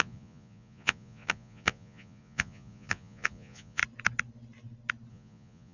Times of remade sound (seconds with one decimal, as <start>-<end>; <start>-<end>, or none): 0.0-3.8; 5.1-5.7